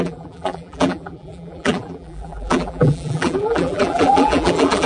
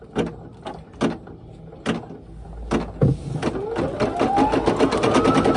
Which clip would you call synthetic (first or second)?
first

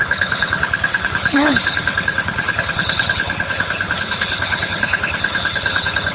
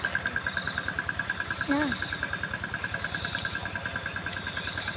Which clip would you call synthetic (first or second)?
first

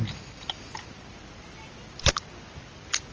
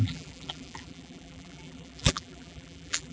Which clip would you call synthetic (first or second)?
second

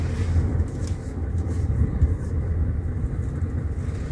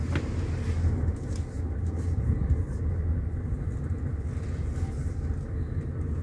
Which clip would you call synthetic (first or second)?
first